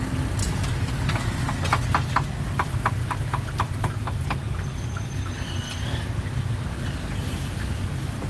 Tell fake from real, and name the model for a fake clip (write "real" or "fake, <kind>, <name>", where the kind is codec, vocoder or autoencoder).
real